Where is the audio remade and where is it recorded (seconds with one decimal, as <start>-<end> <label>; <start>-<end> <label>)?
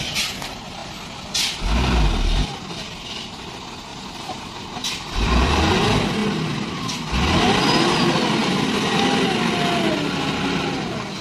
0.0-3.9 recorded; 3.9-5.7 remade; 5.7-11.2 recorded